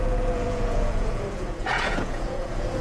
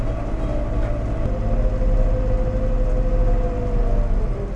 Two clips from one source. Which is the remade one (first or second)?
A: first